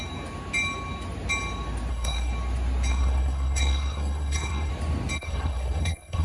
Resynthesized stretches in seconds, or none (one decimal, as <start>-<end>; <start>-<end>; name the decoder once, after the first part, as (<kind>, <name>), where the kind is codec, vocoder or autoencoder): 1.9-2.3 (codec, SNAC); 2.9-4.7; 5.2-6.2